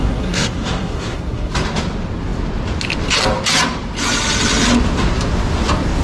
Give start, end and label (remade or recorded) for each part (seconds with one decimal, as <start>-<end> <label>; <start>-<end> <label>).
0.0-1.5 remade; 1.5-6.0 recorded